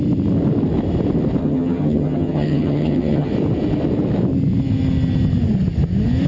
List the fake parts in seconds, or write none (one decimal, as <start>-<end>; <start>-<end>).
1.4-3.3